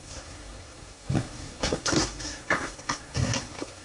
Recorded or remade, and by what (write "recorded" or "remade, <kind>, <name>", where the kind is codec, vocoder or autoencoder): remade, codec, SNAC